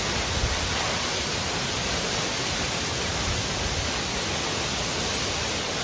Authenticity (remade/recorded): recorded